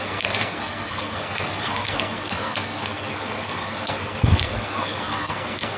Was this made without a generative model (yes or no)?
no